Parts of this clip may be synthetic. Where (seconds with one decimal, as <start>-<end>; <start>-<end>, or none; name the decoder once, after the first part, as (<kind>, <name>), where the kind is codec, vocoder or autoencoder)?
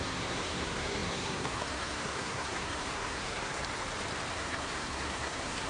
0.0-3.6 (codec, SNAC); 4.3-5.7